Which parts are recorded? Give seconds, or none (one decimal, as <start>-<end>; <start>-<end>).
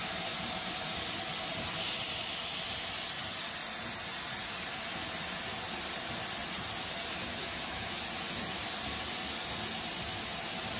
0.0-7.4; 8.0-10.8